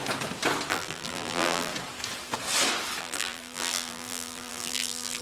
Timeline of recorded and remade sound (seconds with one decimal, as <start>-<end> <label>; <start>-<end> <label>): 0.0-0.7 recorded; 0.7-1.7 remade; 1.7-3.0 recorded; 3.0-5.2 remade